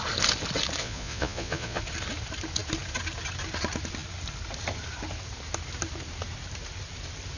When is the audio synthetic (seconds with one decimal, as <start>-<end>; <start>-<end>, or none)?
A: 0.8-1.8